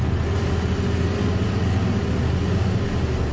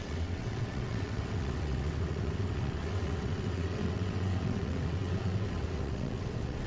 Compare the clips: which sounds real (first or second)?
first